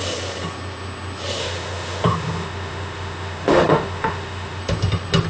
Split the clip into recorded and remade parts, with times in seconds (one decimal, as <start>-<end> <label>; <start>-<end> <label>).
0.0-1.4 recorded; 1.4-4.6 remade; 4.6-5.3 recorded